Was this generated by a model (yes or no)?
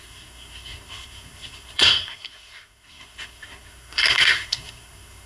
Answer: yes